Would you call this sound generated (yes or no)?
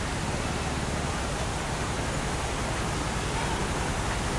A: no